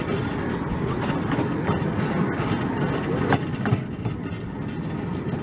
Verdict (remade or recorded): recorded